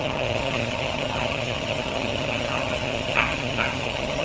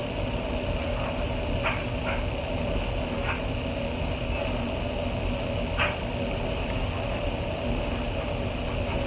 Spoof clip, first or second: first